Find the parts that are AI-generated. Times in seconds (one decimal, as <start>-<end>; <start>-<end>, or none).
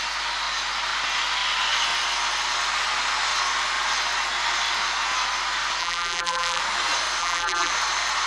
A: 5.8-6.6; 7.2-7.7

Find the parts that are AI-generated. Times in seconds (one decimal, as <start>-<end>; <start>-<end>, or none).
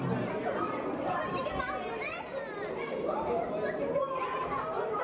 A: 0.4-3.4; 4.4-5.0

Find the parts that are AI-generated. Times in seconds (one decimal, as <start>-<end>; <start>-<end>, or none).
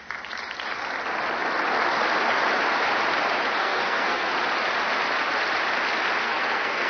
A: 3.6-4.3; 6.2-6.9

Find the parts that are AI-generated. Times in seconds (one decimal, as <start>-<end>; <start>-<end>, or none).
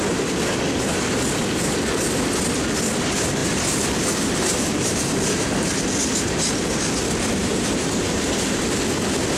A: 3.4-5.8; 7.4-8.6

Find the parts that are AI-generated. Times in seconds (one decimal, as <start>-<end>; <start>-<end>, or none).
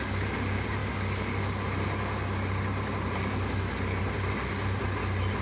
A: none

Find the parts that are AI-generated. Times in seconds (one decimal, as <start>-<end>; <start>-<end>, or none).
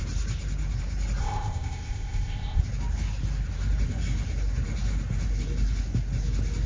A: 1.2-2.6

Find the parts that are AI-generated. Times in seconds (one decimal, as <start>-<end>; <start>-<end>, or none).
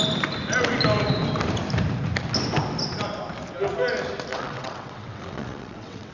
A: 4.3-6.1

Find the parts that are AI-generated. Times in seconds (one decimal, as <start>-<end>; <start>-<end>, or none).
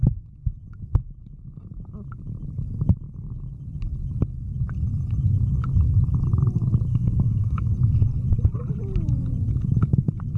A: 6.9-7.7